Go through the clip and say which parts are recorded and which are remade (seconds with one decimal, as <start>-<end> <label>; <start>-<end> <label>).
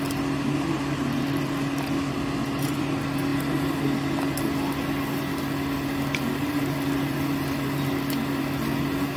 0.0-9.2 recorded